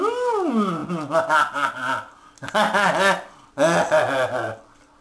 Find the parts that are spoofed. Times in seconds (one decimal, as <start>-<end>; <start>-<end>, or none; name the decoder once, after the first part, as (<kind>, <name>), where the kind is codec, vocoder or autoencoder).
none